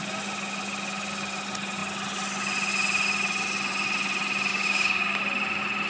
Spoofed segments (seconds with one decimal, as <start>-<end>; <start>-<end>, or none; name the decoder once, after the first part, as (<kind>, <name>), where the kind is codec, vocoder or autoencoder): 4.5-5.2 (codec, DAC)